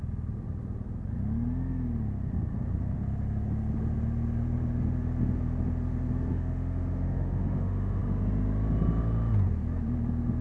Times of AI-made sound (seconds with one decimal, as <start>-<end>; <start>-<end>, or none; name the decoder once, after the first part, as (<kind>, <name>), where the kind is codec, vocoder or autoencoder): 6.3-8.0 (autoencoder, DAC-VAE)